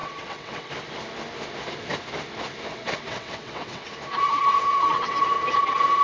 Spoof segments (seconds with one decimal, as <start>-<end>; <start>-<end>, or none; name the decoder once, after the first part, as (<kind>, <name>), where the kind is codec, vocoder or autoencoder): 0.0-0.7 (vocoder, WaveNeXt); 2.7-3.9; 4.3-5.2